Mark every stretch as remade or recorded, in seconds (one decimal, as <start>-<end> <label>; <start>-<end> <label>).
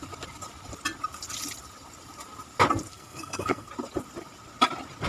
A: 0.0-2.9 recorded; 2.9-3.7 remade; 3.7-5.1 recorded